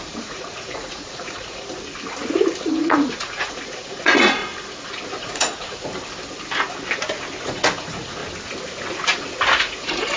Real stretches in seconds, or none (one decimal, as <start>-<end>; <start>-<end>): 1.6-2.6; 4.4-5.2; 5.9-7.4; 8.2-9.6